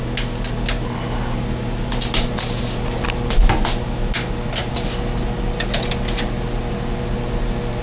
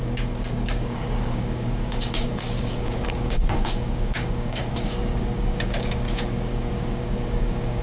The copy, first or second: second